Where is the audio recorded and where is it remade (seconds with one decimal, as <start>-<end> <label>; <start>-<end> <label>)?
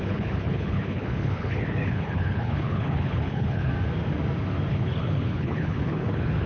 0.0-3.7 remade; 3.7-4.7 recorded; 4.7-6.5 remade